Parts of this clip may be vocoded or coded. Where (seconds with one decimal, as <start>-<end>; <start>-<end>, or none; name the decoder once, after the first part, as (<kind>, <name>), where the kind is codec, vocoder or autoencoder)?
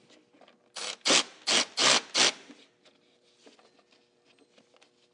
none